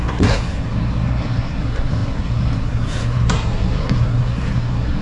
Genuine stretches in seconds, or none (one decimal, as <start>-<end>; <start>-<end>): none